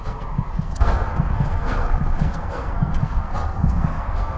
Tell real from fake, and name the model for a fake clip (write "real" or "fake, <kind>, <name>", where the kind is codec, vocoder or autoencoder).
fake, codec, SNAC